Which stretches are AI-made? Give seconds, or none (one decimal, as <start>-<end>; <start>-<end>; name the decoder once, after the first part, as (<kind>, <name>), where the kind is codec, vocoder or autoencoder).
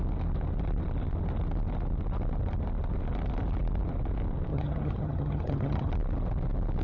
4.5-5.9 (vocoder, HiFi-GAN)